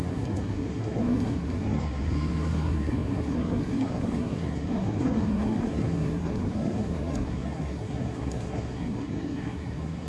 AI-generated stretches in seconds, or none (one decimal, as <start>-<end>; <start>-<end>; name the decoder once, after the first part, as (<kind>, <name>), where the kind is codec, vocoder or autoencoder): 0.0-10.1 (codec, SNAC)